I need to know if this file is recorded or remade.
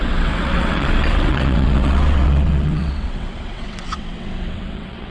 remade